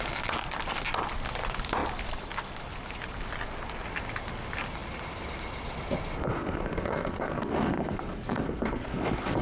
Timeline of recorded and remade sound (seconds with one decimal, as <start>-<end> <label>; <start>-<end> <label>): 0.0-6.2 recorded; 6.2-9.4 remade